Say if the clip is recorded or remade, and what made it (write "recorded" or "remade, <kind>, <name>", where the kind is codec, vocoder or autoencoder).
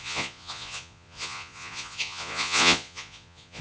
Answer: remade, vocoder, Vocos